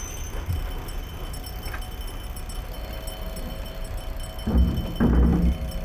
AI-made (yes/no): no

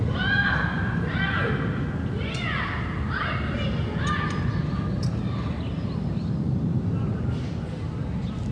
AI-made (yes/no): no